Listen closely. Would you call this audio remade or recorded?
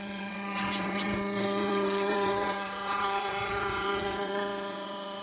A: remade